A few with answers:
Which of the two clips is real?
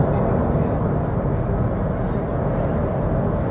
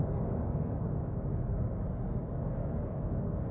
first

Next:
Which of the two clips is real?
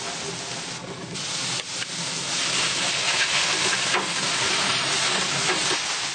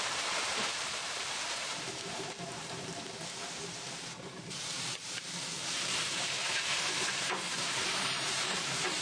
first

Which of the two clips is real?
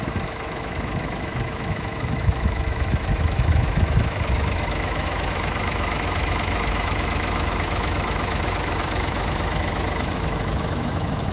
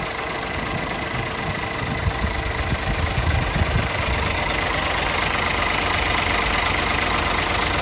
second